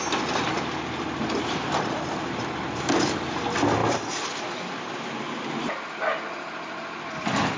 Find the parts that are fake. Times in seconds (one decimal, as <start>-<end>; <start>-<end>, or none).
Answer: none